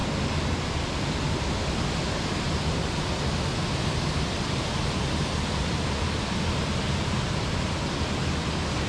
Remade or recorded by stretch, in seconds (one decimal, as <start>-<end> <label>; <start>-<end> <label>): 0.0-8.9 recorded